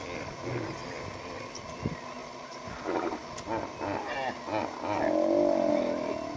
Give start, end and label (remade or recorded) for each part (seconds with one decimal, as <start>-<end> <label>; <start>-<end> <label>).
0.0-6.4 recorded